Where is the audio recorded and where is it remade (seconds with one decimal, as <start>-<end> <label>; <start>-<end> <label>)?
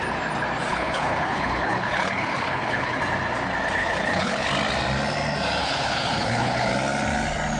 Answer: 0.0-0.7 recorded; 0.7-3.0 remade; 3.0-3.8 recorded; 3.8-4.5 remade; 4.5-5.6 recorded; 5.6-6.7 remade; 6.7-7.6 recorded